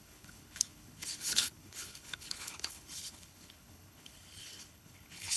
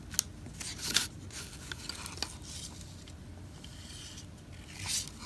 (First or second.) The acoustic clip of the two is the second